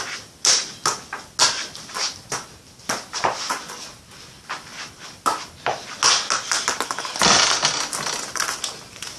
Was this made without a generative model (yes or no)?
yes